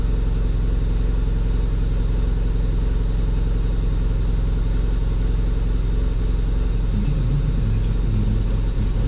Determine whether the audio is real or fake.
real